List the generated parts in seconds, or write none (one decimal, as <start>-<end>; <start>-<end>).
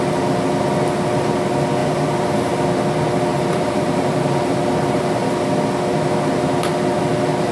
1.8-2.5; 3.3-5.3